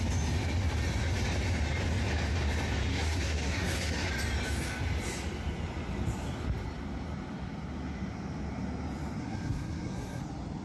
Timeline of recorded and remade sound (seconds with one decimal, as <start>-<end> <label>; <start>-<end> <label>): 0.0-2.9 recorded; 2.9-4.1 remade; 4.1-9.2 recorded; 9.2-10.2 remade; 10.2-10.6 recorded